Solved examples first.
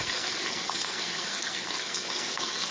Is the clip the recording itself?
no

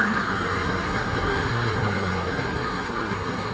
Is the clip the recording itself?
no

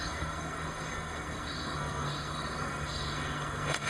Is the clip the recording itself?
no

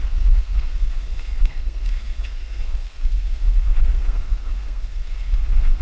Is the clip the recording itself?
no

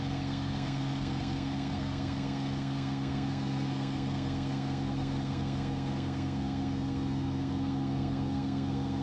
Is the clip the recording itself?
no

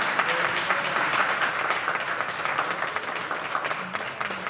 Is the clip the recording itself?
yes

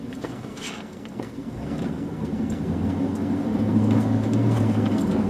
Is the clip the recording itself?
no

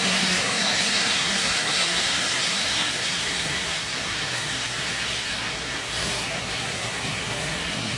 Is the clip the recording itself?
no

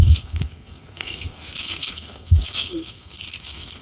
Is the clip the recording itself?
no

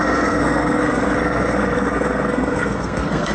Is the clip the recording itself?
no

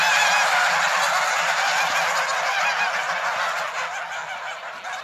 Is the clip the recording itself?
yes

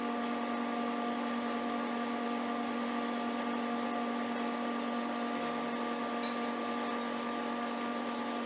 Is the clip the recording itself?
yes